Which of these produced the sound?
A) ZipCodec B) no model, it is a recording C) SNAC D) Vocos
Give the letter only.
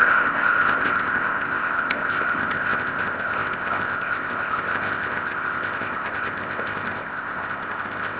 A